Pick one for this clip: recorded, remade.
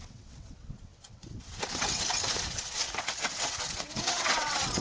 remade